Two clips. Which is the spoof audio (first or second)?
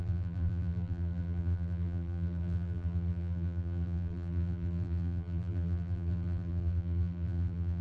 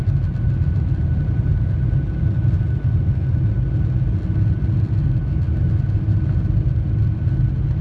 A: first